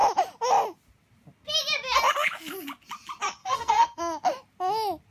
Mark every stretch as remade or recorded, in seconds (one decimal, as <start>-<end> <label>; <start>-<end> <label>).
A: 0.0-3.4 recorded; 3.4-4.0 remade; 4.0-5.1 recorded